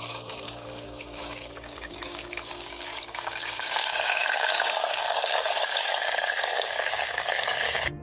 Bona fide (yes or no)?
no